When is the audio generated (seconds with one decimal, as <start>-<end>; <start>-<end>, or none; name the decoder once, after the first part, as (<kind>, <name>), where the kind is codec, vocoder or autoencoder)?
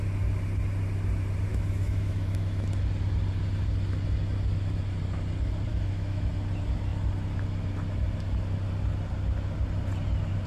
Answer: 1.5-2.8 (autoencoder, DAC-VAE); 5.7-6.3